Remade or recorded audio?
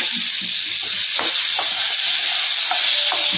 recorded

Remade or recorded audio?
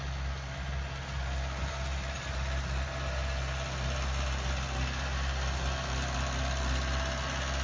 recorded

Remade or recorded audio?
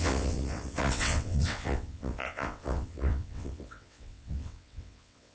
remade